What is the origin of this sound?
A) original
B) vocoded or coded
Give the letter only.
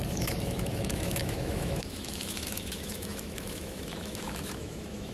B